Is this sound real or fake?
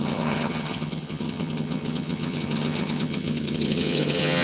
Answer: fake